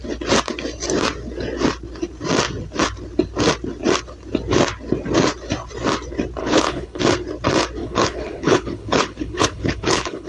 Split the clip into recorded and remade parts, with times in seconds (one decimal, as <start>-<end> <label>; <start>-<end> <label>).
0.0-6.4 recorded; 6.4-7.0 remade; 7.0-7.8 recorded; 7.8-10.3 remade